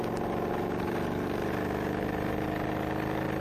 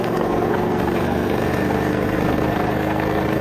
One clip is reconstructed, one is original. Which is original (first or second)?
first